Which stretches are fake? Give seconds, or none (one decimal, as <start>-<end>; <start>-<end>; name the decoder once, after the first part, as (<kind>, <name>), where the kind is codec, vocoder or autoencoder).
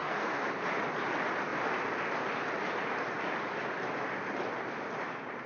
0.0-0.5 (codec, SNAC)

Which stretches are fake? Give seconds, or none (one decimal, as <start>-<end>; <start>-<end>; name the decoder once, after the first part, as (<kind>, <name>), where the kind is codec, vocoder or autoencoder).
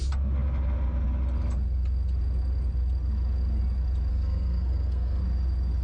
4.1-5.2 (codec, SNAC)